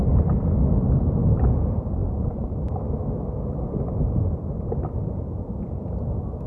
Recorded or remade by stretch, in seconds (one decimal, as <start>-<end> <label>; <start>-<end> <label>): 0.0-6.5 recorded